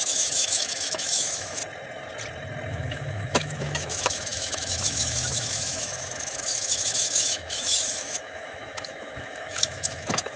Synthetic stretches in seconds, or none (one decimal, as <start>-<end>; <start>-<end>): 0.0-1.6; 2.7-10.4